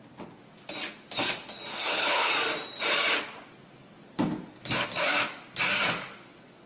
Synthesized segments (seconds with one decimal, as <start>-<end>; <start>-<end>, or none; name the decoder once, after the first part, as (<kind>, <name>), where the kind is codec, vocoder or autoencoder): 1.7-2.3 (codec, HILCodec)